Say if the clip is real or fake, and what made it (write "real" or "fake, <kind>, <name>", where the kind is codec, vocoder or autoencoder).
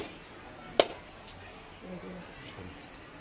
real